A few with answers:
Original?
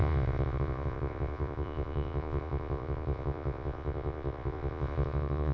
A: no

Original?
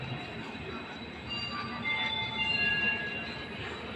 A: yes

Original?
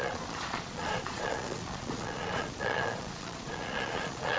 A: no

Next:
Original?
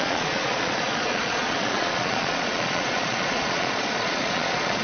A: no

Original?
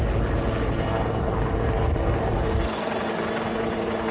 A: yes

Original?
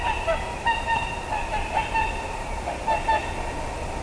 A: yes